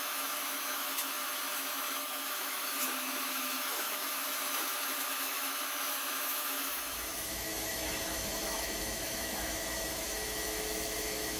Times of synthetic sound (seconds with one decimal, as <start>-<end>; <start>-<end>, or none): 0.0-11.4